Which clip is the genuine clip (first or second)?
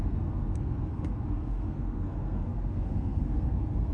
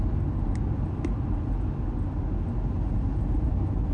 second